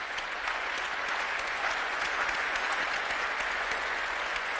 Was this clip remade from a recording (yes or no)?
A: yes